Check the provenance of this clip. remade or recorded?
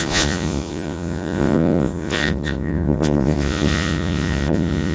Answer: remade